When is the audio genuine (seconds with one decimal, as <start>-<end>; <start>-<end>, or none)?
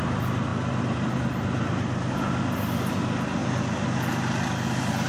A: 0.0-5.1